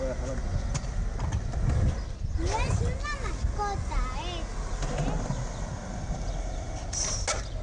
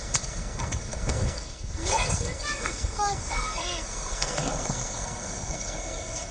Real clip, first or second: first